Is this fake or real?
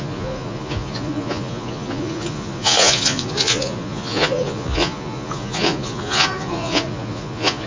fake